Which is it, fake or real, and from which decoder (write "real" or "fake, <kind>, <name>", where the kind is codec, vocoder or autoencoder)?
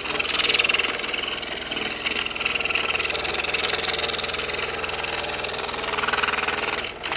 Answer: real